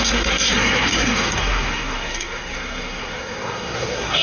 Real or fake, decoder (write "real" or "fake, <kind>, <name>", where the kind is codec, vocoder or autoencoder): fake, codec, SNAC